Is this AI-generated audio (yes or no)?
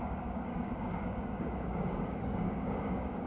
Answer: yes